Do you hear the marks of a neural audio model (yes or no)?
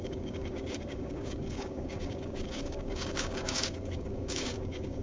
yes